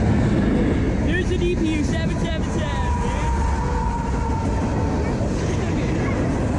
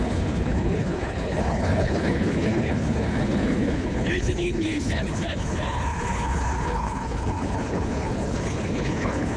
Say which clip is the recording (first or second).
first